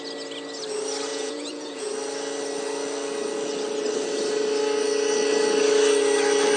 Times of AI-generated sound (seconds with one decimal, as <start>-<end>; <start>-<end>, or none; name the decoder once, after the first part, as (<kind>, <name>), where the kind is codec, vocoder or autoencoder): 1.1-1.9 (vocoder, Vocos)

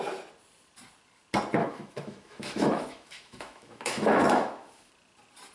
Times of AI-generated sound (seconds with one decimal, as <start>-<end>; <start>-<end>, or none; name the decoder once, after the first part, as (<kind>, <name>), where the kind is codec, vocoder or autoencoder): 1.6-4.9 (autoencoder, DAC-VAE)

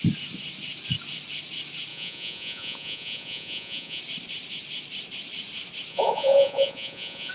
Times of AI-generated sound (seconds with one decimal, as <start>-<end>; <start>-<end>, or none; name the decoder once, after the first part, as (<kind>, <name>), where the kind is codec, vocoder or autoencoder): 1.9-4.0 (vocoder, Vocos); 5.9-7.3

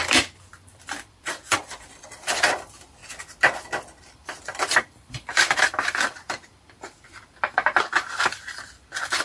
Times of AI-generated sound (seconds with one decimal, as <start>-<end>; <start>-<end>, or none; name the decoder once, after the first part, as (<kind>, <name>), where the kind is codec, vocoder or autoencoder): 0.0-3.0 (vocoder, BigVGAN v2); 4.0-9.2

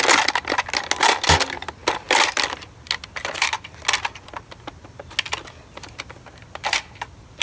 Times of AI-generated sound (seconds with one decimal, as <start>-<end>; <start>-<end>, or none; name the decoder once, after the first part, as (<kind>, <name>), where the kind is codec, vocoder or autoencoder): none

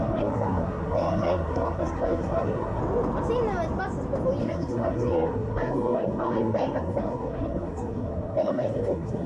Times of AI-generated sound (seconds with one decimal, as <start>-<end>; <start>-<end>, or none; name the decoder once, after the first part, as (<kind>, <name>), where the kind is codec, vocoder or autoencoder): 0.0-2.8 (codec, SNAC); 4.4-9.3

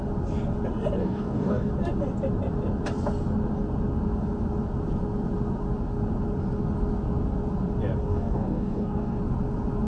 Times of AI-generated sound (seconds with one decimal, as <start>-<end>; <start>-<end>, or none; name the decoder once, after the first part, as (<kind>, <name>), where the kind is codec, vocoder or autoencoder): 1.0-1.7 (codec, DAC); 8.0-9.2

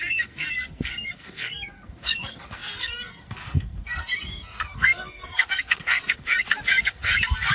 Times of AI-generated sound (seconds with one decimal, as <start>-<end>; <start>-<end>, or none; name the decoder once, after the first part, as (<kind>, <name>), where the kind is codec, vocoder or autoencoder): 0.0-7.5 (codec, SNAC)